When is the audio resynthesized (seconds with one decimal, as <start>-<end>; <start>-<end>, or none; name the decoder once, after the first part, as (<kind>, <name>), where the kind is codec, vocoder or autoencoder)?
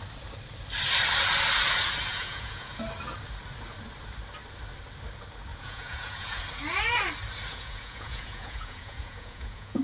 2.1-2.8 (vocoder, Vocos); 5.5-6.4; 7.5-9.8